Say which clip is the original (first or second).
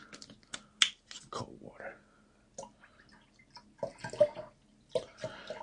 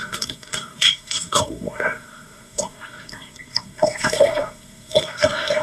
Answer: first